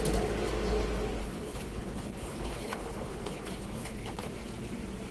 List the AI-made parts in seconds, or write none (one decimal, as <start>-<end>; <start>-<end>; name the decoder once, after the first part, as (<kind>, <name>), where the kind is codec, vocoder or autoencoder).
1.2-4.3 (codec, HILCodec)